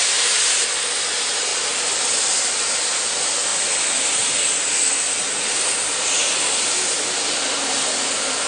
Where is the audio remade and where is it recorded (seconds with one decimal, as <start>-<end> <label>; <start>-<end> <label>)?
0.0-1.5 recorded; 1.5-2.8 remade; 2.8-8.5 recorded